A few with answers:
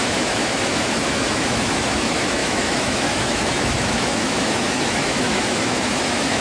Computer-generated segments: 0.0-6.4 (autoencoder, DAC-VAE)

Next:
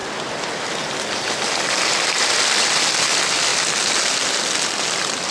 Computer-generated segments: none

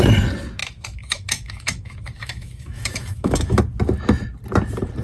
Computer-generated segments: 0.6-3.6 (autoencoder, DAC-VAE)

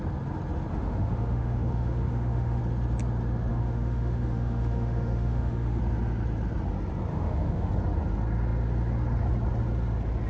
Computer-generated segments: 0.7-2.6 (autoencoder, DAC-VAE); 3.5-5.8; 7.1-7.7

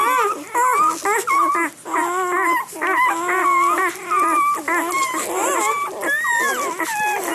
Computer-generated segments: none

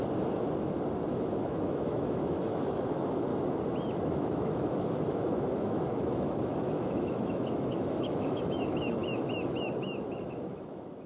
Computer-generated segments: 1.1-3.3 (autoencoder, DAC-VAE); 4.0-11.1

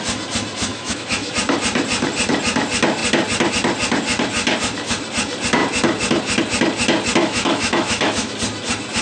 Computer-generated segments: 0.7-1.3 (autoencoder, DAC-VAE); 7.2-8.3